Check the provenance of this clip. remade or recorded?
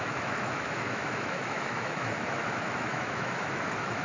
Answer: remade